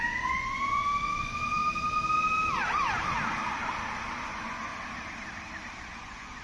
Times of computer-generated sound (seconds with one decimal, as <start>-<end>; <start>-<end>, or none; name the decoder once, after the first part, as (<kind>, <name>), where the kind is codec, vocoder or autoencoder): 0.0-1.6 (vocoder, Vocos); 4.3-4.7; 5.8-6.4